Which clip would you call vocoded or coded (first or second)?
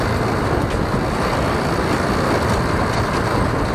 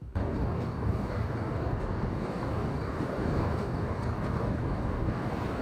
second